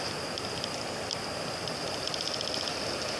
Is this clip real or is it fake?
real